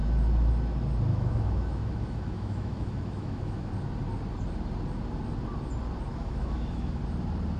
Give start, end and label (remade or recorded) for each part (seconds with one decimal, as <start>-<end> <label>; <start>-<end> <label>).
0.0-1.1 recorded; 1.1-3.7 remade; 3.7-6.1 recorded; 6.1-7.0 remade; 7.0-7.6 recorded